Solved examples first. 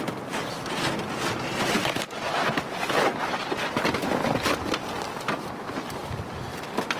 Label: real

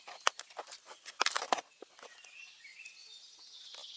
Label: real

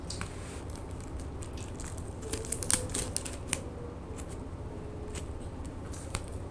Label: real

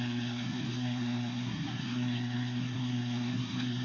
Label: fake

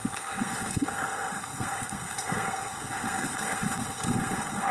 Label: fake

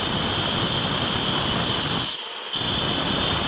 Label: real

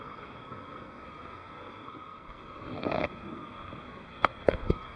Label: fake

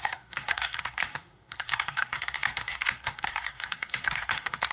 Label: fake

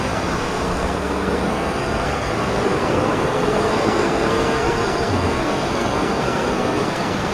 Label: fake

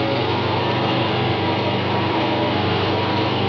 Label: fake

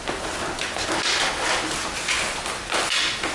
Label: real